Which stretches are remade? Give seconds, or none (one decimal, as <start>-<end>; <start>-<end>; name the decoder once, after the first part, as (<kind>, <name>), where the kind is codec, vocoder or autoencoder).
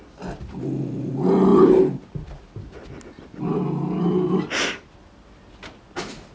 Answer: none